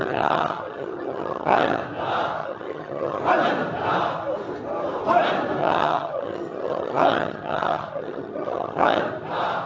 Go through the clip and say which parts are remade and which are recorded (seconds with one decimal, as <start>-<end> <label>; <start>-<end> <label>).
0.0-1.8 remade; 1.8-2.4 recorded; 2.4-3.2 remade; 3.2-5.6 recorded; 5.6-9.0 remade; 9.0-9.7 recorded